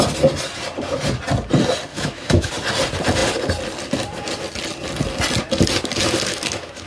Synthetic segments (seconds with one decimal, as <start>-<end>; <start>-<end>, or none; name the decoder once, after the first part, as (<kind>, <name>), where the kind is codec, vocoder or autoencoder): 1.9-2.5 (autoencoder, DAC-VAE); 6.3-6.9